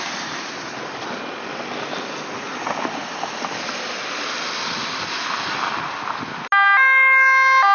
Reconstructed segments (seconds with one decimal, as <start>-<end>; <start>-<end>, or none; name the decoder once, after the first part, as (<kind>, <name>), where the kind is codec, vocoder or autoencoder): none